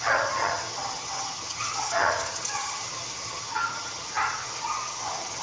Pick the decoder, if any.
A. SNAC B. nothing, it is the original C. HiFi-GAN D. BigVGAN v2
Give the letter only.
C